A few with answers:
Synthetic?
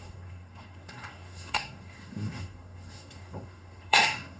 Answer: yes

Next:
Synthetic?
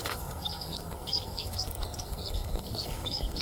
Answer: yes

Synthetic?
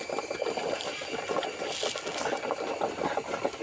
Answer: no